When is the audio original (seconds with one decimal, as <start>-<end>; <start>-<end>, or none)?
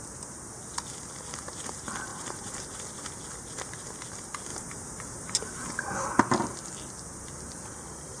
0.0-2.1; 2.8-4.5; 6.2-8.2